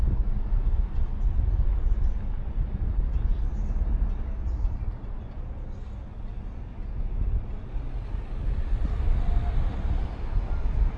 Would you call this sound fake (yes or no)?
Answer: no